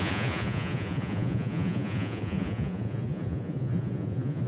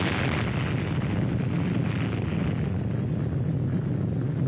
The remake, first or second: first